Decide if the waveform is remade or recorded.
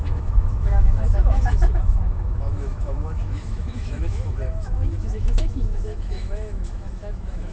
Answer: remade